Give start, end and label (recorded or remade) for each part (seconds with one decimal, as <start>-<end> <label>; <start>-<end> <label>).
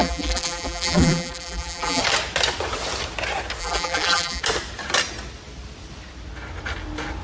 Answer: 0.0-2.0 remade; 2.0-3.6 recorded; 3.6-4.4 remade; 4.4-7.2 recorded